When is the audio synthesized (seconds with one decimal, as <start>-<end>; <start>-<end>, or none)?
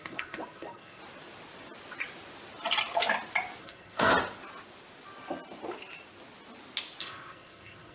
0.0-1.0; 3.6-4.1; 7.0-7.9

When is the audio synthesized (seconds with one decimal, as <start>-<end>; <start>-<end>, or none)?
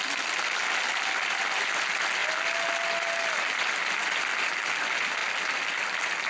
none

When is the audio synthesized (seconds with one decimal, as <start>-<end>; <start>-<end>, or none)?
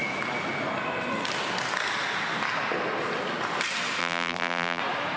4.0-4.8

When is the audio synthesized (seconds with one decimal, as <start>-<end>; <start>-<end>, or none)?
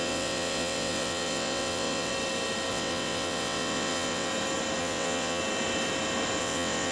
0.0-2.1; 2.7-4.3; 4.8-5.4; 6.4-6.9